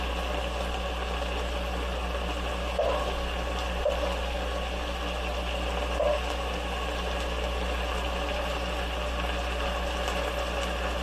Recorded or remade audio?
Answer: recorded